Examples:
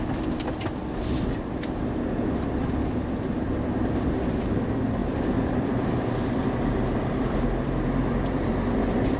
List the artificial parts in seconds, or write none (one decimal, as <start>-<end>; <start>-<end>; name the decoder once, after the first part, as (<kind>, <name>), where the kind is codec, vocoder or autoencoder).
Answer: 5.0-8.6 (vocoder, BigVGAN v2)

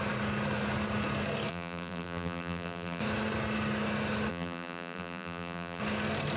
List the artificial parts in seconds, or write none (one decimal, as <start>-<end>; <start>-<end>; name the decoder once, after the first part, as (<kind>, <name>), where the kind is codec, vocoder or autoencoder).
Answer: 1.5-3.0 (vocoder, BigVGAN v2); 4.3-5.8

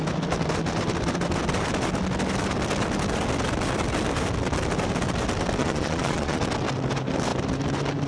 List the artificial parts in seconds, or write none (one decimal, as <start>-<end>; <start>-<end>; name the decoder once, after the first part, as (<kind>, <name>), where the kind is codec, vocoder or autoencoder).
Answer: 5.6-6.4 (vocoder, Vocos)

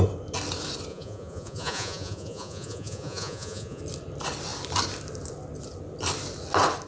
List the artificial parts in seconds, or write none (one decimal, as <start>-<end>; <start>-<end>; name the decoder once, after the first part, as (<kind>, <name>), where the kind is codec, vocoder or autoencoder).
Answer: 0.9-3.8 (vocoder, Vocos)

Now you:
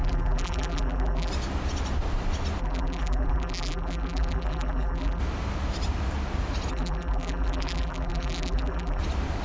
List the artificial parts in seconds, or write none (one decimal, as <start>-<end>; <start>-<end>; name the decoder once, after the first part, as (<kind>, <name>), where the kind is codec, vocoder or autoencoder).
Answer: 0.0-1.3 (vocoder, BigVGAN v2); 2.6-5.2; 6.7-9.0

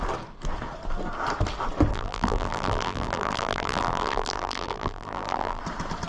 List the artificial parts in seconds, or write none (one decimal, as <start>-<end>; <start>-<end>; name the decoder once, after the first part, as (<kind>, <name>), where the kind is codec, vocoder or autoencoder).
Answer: 1.9-5.6 (vocoder, BigVGAN v2)

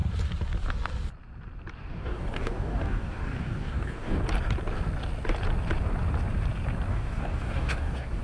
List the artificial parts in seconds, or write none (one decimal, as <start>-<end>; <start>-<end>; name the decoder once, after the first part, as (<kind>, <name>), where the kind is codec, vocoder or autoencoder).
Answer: 1.9-4.2 (codec, DAC); 6.9-8.2